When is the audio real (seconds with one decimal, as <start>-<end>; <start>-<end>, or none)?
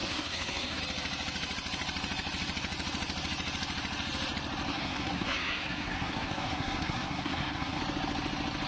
0.8-4.7; 7.8-8.7